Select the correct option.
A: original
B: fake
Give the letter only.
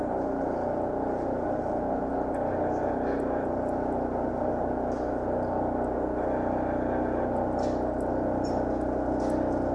A